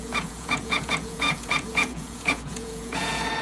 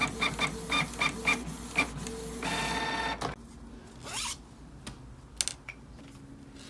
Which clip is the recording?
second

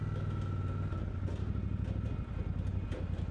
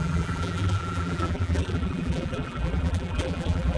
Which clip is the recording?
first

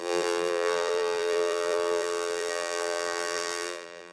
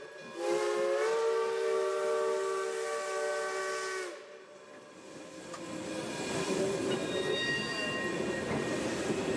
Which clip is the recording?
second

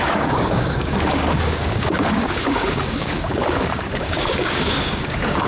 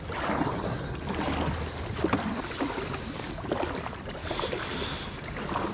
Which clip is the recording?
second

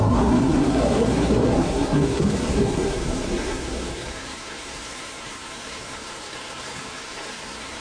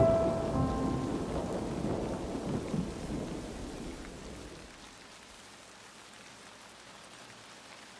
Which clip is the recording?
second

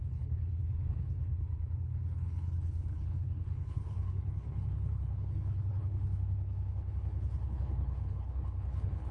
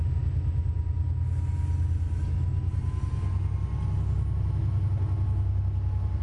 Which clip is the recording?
second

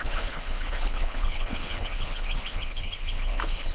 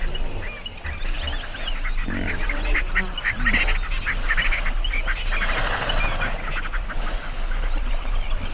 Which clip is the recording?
second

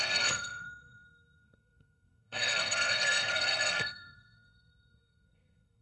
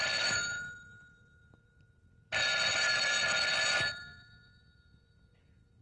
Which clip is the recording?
second